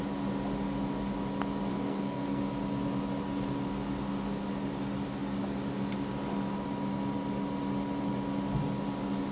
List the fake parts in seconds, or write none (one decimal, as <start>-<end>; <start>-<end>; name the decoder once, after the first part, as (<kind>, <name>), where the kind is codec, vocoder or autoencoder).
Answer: 1.7-2.4 (codec, SNAC)